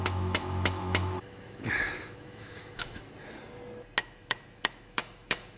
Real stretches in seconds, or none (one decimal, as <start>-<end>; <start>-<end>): 3.1-4.0